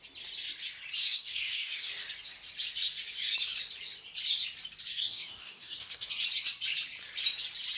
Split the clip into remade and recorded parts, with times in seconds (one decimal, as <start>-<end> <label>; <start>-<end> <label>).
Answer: 0.0-1.0 recorded; 1.0-1.9 remade; 1.9-4.9 recorded; 4.9-6.1 remade; 6.1-7.8 recorded